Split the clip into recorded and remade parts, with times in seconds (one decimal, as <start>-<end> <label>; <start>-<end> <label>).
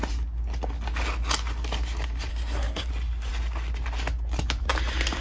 0.0-2.3 recorded; 2.3-2.9 remade; 2.9-5.2 recorded